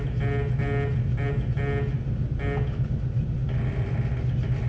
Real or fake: real